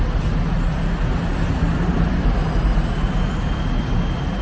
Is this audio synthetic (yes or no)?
no